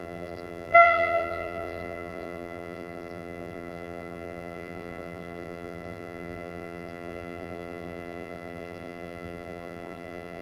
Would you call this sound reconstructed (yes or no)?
yes